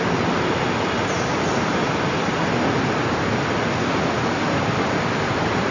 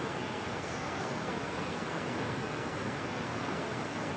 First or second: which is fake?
second